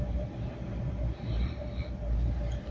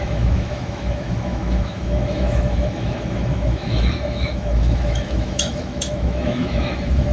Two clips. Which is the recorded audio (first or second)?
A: first